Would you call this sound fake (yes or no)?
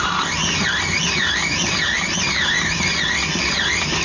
no